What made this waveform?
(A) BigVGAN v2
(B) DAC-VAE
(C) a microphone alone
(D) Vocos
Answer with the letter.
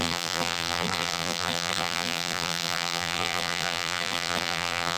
A